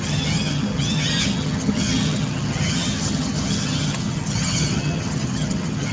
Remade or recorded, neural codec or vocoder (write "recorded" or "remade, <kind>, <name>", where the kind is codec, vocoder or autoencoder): remade, vocoder, HiFi-GAN